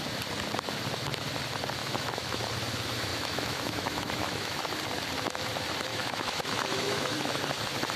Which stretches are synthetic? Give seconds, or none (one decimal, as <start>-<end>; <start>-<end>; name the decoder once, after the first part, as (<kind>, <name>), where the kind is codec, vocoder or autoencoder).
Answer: 1.8-2.4 (autoencoder, DAC-VAE); 3.1-4.6; 5.9-7.4